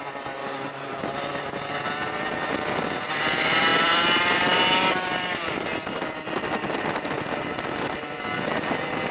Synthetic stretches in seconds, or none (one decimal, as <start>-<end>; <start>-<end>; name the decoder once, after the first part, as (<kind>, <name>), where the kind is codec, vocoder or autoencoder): 0.4-1.0 (codec, DAC)